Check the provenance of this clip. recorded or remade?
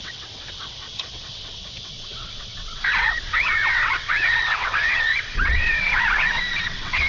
remade